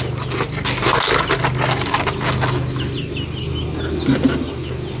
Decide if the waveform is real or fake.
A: real